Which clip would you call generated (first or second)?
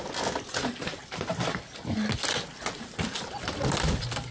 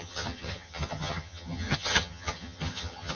second